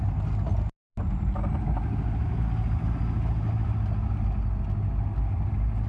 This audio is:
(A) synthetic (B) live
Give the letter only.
B